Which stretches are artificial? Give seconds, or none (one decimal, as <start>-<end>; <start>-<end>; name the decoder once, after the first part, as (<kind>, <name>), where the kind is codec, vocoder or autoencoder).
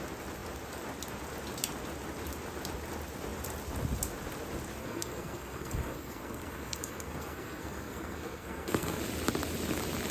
4.8-9.0 (codec, SNAC)